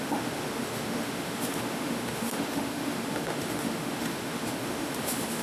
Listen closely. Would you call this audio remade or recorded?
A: remade